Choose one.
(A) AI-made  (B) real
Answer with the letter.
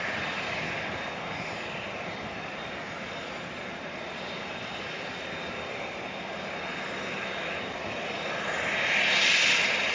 B